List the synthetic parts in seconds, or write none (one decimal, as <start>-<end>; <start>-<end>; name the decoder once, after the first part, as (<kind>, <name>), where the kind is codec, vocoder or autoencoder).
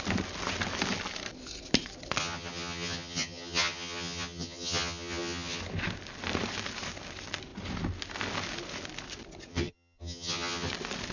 2.2-5.6 (vocoder, HiFi-GAN); 9.5-10.7